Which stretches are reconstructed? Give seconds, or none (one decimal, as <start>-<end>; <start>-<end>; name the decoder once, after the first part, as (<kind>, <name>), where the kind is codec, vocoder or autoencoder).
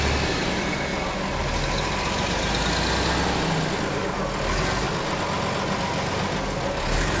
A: none